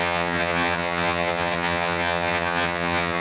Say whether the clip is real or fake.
fake